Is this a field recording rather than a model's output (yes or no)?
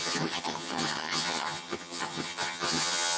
no